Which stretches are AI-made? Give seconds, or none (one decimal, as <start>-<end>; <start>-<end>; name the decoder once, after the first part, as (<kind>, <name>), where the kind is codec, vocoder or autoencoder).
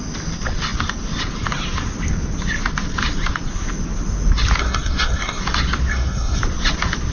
4.6-5.4 (codec, SNAC); 5.9-6.4